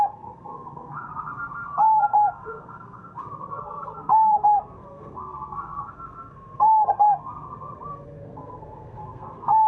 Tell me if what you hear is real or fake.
fake